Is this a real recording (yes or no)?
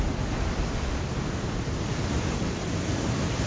yes